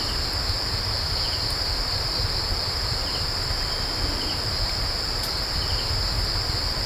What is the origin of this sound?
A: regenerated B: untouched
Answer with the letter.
A